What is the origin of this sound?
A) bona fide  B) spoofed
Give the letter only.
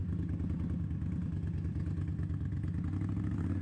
A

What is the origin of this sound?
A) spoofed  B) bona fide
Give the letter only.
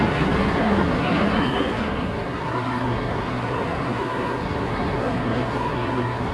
A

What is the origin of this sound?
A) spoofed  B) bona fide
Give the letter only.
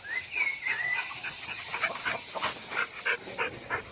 B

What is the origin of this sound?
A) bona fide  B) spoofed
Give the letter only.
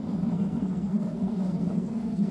B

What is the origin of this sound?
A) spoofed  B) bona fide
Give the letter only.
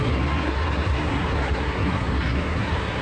A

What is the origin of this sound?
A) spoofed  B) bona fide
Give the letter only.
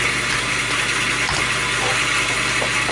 B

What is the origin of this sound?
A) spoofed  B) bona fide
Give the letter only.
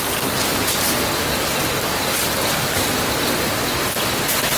B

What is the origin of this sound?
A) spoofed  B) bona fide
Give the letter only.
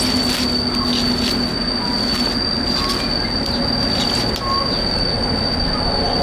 B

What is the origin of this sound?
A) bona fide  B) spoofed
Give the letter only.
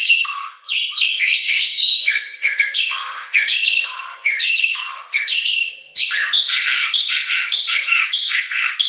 B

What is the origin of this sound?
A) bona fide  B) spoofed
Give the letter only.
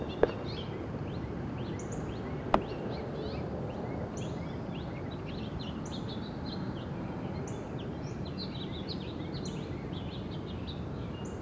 A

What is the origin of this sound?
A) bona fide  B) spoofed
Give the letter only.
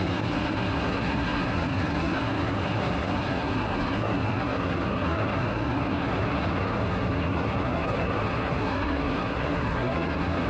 B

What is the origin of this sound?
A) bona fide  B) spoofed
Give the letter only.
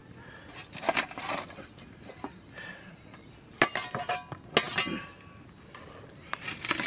A